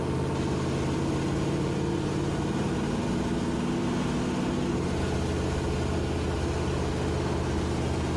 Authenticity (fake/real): real